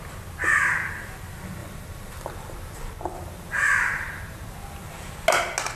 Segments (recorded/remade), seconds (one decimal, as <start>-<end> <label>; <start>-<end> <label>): 0.0-1.6 recorded; 1.6-5.1 remade; 5.1-5.8 recorded

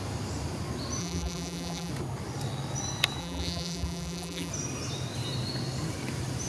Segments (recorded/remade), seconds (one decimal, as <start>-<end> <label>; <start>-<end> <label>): 0.0-1.0 recorded; 1.0-1.9 remade; 1.9-3.2 recorded; 3.2-4.5 remade; 4.5-6.5 recorded

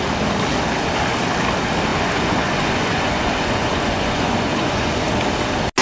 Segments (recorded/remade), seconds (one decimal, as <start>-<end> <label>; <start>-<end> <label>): 0.0-1.9 recorded; 1.9-5.1 remade; 5.1-5.8 recorded

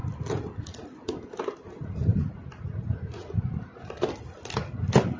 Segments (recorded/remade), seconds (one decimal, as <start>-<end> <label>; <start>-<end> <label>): 0.0-5.2 recorded

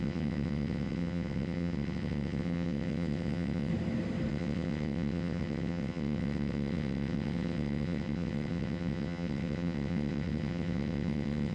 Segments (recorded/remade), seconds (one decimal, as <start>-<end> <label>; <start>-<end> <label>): 0.0-3.7 remade; 3.7-4.3 recorded; 4.3-11.5 remade

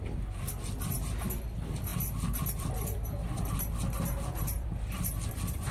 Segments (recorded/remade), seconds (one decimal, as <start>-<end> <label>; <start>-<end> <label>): 0.0-5.7 recorded

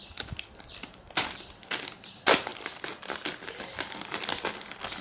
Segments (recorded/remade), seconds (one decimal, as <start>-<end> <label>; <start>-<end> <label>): 0.0-1.1 remade; 1.1-5.0 recorded